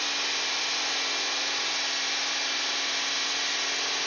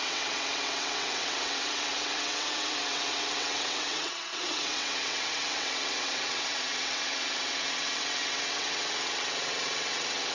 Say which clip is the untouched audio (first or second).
first